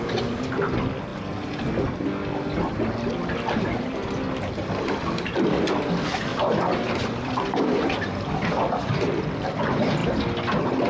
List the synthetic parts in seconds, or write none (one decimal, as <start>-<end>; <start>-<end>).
6.3-9.6